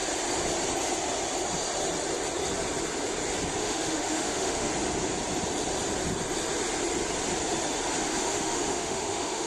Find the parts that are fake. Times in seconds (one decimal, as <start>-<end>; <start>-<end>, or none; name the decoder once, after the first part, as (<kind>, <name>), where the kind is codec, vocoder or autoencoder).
3.6-4.7 (autoencoder, DAC-VAE); 8.0-9.5